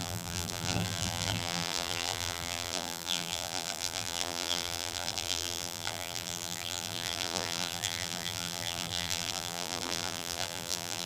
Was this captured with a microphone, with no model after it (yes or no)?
no